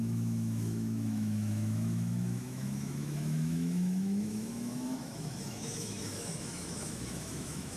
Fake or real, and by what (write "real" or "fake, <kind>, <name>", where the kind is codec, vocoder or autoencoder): fake, autoencoder, DAC-VAE